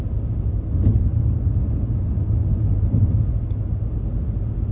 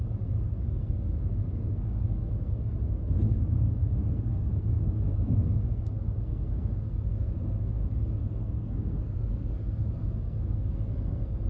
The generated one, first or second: second